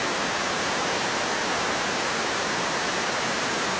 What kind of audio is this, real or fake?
real